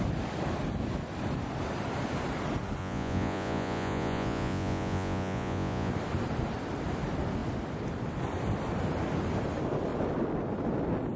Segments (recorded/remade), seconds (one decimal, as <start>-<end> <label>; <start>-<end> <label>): 0.0-2.8 recorded; 2.8-5.9 remade; 5.9-11.2 recorded